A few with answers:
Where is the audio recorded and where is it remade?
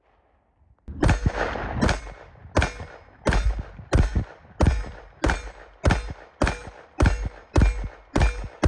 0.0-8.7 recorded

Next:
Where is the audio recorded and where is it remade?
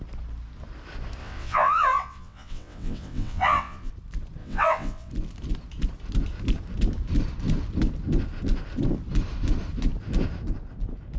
0.0-1.2 recorded; 1.2-3.9 remade; 3.9-4.4 recorded; 4.4-5.1 remade; 5.1-11.2 recorded